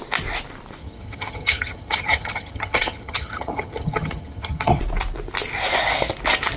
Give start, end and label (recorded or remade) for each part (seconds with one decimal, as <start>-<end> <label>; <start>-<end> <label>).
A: 0.0-0.8 recorded; 0.8-4.8 remade; 4.8-6.6 recorded